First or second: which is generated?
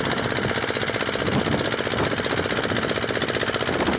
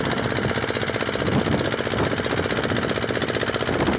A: first